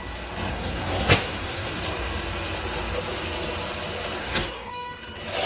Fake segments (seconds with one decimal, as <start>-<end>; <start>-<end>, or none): 0.5-1.7; 4.2-4.7